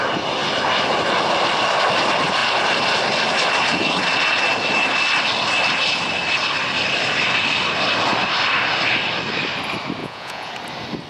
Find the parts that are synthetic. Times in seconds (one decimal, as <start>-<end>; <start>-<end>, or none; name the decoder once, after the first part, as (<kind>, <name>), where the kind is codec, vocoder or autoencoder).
10.0-10.5 (vocoder, Vocos)